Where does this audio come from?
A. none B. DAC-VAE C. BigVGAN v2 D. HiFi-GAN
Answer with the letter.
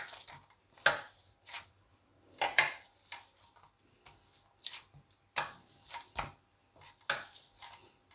A